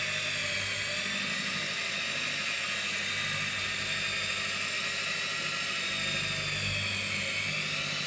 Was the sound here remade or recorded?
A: recorded